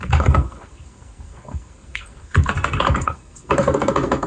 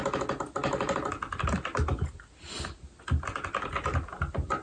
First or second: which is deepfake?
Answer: first